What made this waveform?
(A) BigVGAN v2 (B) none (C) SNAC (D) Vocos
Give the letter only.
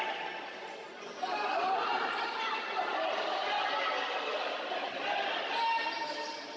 B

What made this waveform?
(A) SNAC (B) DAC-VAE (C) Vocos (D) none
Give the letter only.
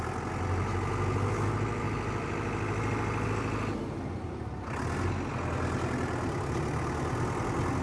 D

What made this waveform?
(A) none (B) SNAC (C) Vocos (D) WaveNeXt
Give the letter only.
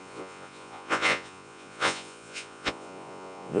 C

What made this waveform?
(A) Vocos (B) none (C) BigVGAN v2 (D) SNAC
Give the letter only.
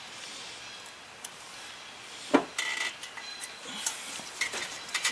B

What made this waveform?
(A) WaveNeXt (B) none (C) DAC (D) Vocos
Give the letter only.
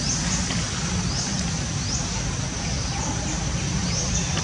B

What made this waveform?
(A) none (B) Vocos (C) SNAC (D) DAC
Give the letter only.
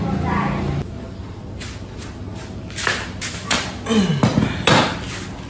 A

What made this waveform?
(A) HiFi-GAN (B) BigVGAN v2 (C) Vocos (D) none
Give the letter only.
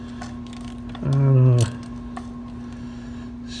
D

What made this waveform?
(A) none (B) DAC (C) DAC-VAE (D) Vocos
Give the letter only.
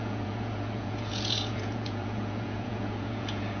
D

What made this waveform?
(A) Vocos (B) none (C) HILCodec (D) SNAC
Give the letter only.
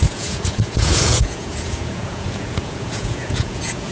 A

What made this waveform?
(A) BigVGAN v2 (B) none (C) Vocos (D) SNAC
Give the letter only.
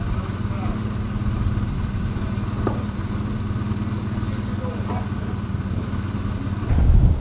B